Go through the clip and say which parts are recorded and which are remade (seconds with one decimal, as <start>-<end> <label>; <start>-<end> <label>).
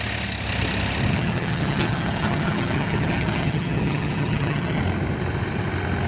0.0-1.1 recorded; 1.1-4.8 remade; 4.8-6.1 recorded